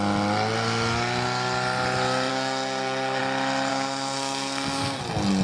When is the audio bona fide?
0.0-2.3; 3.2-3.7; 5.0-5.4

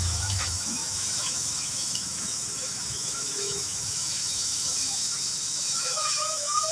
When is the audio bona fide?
none

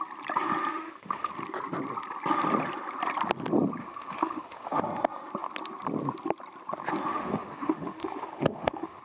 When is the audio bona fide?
0.0-0.7; 1.3-3.8; 4.8-7.1

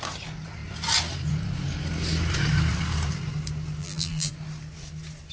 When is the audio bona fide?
0.0-3.8; 4.3-5.3

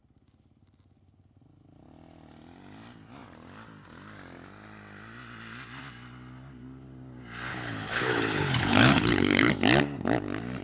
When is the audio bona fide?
0.0-7.5; 9.5-10.6

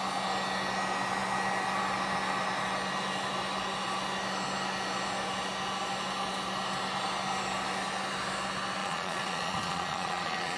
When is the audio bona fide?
0.0-8.8

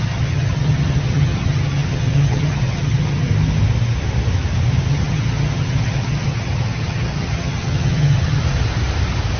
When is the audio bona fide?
3.3-4.9; 8.4-9.4